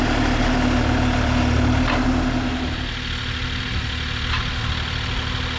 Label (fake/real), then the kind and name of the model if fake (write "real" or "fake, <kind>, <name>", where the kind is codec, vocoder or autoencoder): real